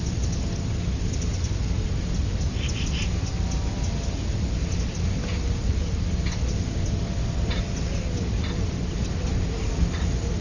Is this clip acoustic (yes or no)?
yes